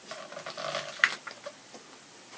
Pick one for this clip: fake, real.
fake